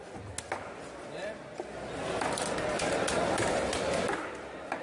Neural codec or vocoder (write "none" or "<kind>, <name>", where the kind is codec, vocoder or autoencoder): none